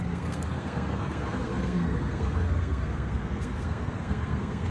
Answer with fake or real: fake